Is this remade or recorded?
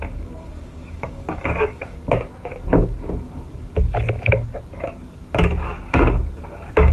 remade